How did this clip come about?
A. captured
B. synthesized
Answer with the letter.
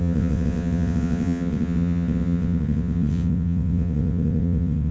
B